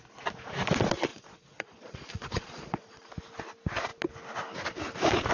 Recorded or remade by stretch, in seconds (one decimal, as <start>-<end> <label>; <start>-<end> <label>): 0.0-1.1 recorded; 1.1-3.1 remade; 3.1-5.3 recorded